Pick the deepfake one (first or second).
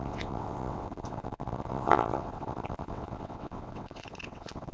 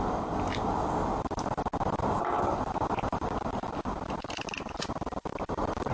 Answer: first